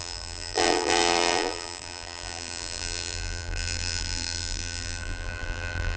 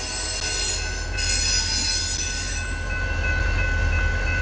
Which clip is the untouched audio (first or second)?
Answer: second